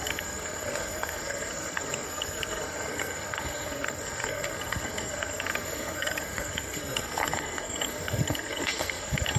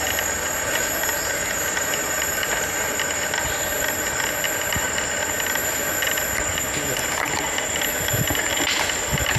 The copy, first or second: first